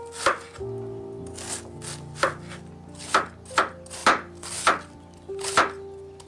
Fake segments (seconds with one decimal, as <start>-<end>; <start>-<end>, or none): none